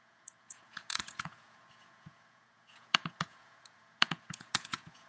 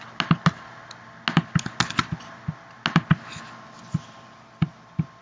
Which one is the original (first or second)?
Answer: second